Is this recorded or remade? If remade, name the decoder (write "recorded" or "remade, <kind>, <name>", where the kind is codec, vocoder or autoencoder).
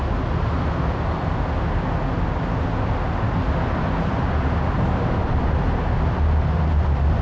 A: recorded